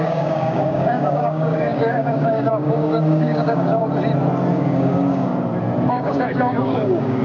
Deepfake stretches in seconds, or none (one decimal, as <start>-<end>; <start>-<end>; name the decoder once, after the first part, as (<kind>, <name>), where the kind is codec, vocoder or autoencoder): 0.0-3.8 (codec, DAC); 4.5-5.3; 5.9-7.2